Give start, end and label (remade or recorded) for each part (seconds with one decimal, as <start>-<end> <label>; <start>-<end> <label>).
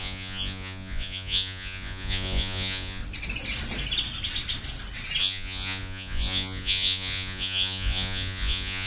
0.0-3.0 remade; 3.0-5.2 recorded; 5.2-8.9 remade